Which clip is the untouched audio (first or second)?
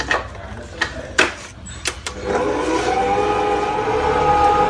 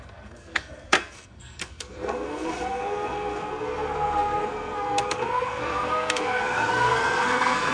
first